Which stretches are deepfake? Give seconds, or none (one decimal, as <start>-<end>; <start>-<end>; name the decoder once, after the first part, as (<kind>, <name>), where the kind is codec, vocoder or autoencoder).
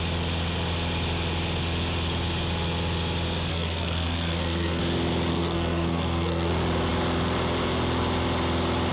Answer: 3.5-4.8 (codec, SNAC); 5.3-6.5